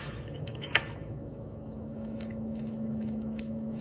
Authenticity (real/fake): fake